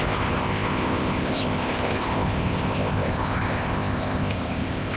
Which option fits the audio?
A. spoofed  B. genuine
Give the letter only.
A